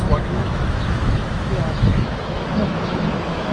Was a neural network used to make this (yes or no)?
yes